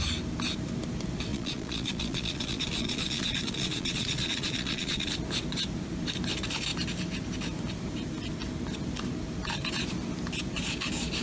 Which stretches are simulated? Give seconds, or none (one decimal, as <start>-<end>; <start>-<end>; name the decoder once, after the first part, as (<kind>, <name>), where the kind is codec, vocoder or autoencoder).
1.3-5.1 (vocoder, Vocos)